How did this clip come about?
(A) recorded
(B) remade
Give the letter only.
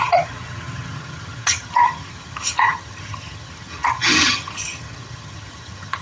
B